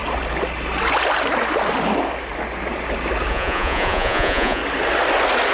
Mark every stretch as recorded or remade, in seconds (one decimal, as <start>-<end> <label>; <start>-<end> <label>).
0.0-3.3 recorded; 3.3-4.6 remade; 4.6-5.5 recorded